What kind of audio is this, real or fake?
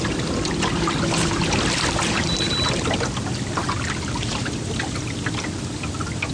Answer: real